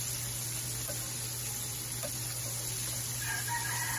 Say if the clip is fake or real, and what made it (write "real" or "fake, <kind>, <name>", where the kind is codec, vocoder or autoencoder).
real